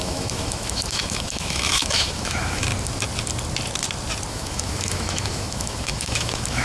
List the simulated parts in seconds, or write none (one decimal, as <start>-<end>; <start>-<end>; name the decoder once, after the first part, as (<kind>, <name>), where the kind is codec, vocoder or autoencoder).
0.0-2.7 (autoencoder, DAC-VAE); 4.3-6.6